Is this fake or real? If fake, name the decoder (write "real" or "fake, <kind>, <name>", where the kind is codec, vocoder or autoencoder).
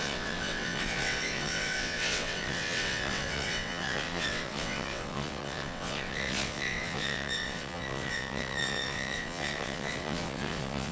fake, vocoder, WaveNeXt